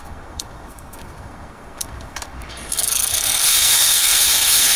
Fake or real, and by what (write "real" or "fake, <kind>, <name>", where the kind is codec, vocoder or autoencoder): fake, codec, SNAC